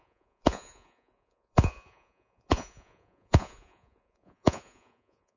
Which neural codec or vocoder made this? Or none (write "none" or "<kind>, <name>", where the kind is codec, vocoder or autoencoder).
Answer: vocoder, Vocos